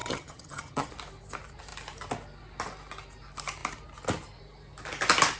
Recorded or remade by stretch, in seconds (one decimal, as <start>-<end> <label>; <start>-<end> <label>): 0.0-0.9 remade; 0.9-5.4 recorded